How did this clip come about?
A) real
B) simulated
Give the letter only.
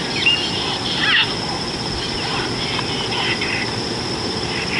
A